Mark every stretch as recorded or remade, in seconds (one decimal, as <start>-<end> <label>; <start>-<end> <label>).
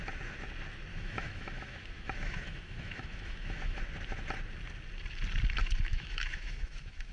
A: 0.0-0.9 recorded; 0.9-3.8 remade; 3.8-5.6 recorded; 5.6-7.1 remade